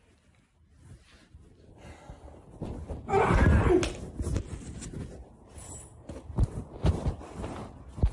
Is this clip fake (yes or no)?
no